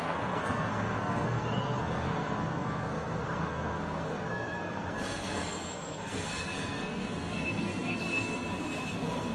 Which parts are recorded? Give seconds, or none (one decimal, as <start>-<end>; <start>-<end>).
none